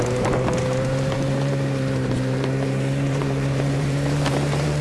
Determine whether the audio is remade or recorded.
remade